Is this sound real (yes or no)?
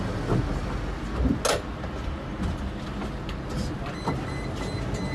yes